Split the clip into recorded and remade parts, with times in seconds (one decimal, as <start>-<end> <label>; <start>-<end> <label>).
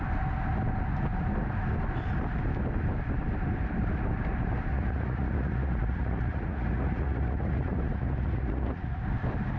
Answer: 0.0-4.7 recorded; 4.7-9.0 remade; 9.0-9.6 recorded